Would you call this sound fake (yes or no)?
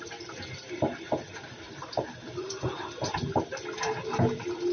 no